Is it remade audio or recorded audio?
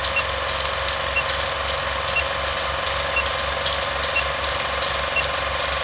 recorded